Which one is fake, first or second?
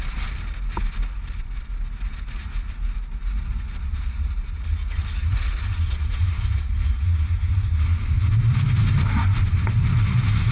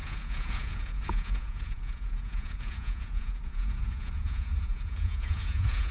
second